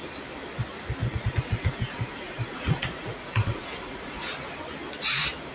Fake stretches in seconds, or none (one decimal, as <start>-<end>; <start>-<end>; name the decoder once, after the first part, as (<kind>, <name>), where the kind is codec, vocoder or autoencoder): 1.0-4.3 (vocoder, Vocos)